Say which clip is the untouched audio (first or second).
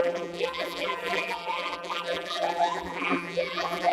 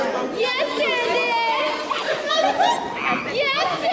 second